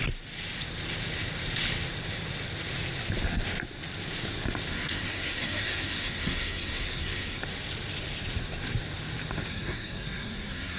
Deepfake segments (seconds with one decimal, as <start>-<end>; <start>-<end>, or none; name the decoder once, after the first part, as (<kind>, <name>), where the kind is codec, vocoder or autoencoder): 4.7-7.4 (codec, SNAC); 9.5-10.8